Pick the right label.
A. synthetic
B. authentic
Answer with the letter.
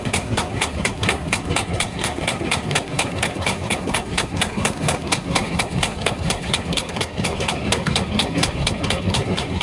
A